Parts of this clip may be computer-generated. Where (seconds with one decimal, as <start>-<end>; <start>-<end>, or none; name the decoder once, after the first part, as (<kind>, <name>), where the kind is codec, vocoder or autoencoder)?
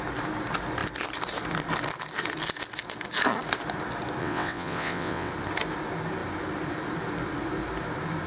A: 4.2-5.3 (vocoder, WaveNeXt)